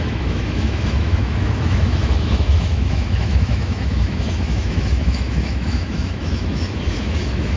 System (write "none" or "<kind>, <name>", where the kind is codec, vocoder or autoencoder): autoencoder, DAC-VAE